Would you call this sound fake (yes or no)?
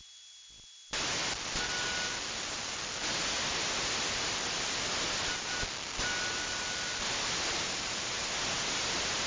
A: no